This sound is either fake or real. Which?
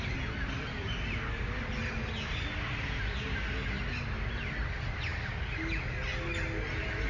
real